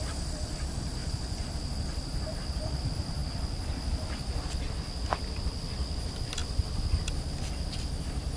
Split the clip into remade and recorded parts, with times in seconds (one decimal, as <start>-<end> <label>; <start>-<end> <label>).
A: 0.0-1.0 recorded; 1.0-1.5 remade; 1.5-8.4 recorded